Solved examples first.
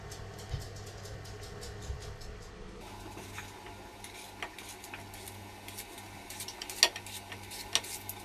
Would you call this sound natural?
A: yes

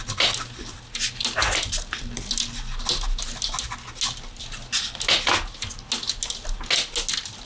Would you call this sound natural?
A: yes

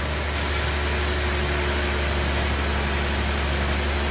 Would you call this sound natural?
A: yes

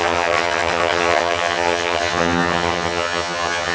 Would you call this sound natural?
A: no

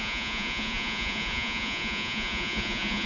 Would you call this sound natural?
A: no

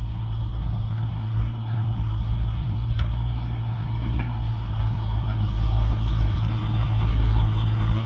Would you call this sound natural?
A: no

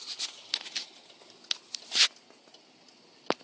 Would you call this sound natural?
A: yes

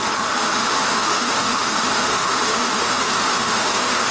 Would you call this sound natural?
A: no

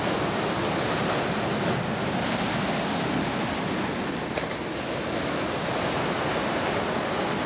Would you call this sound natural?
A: yes